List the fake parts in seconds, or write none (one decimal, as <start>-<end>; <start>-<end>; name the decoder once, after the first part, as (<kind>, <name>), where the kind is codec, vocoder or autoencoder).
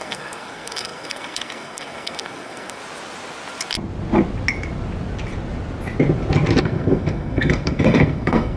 0.0-2.8 (codec, SNAC); 6.6-8.6